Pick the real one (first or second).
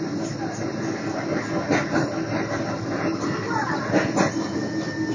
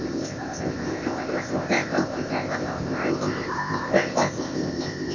first